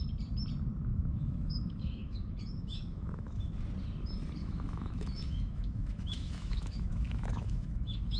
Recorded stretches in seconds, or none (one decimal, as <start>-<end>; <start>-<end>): 0.0-0.9; 3.5-4.4